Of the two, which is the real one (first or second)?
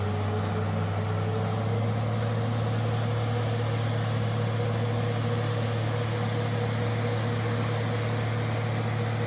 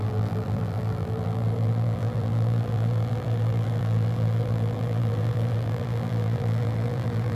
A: first